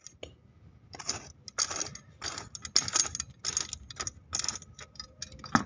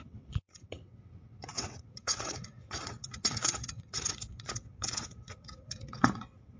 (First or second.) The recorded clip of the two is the first